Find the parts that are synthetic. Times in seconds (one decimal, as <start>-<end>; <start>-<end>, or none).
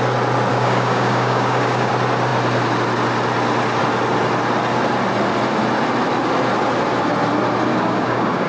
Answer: 0.5-1.9; 7.7-8.5